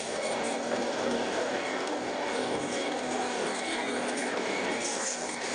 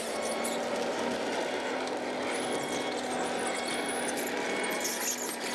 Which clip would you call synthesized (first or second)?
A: first